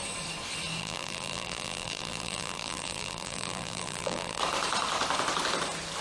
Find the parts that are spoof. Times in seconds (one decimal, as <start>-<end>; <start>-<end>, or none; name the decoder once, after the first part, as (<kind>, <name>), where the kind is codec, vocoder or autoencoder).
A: 0.8-4.4 (vocoder, BigVGAN v2)